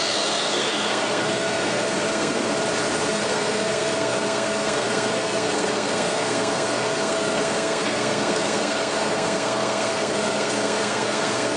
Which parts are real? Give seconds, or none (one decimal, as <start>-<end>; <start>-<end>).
2.5-3.1